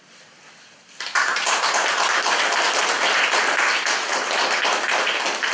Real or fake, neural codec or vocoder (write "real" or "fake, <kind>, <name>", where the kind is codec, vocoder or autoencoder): real